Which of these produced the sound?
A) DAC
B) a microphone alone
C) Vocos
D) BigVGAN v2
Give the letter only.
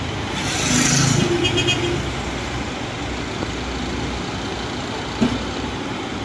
B